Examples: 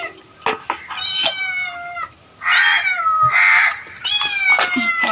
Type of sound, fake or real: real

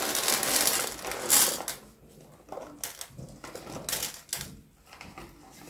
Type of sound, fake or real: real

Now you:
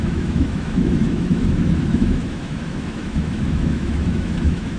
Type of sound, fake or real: fake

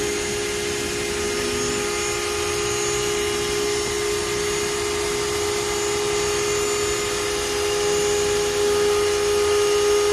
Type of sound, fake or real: real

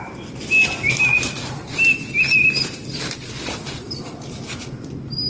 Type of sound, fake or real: real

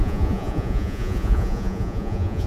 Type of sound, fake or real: fake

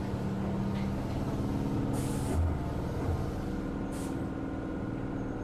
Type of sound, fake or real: real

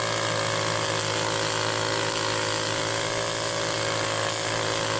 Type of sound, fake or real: real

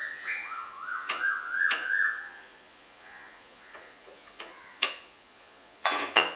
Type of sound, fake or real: fake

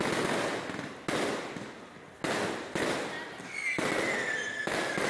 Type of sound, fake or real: real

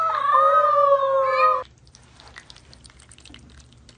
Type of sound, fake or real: real